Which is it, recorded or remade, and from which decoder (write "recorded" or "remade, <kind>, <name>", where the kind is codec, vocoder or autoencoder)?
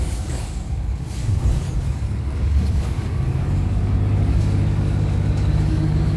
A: remade, codec, DAC